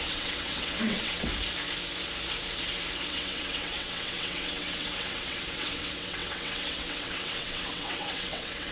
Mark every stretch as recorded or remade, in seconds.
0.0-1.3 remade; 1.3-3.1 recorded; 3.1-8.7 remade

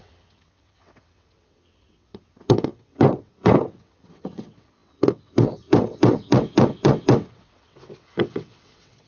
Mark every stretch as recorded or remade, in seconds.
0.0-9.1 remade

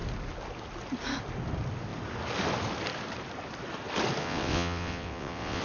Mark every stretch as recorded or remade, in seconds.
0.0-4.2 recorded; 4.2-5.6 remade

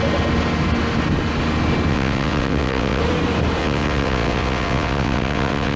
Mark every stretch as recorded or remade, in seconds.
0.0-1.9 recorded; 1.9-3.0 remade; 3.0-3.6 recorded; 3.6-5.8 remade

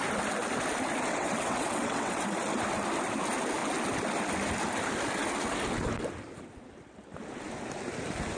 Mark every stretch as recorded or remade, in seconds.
0.0-1.1 recorded; 1.1-2.2 remade; 2.2-8.4 recorded

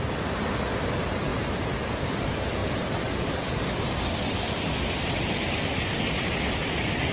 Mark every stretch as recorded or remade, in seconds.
0.0-7.1 recorded